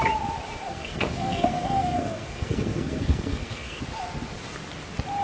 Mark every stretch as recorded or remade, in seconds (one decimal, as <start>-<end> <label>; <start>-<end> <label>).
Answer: 0.0-0.7 recorded; 0.7-3.8 remade; 3.8-5.2 recorded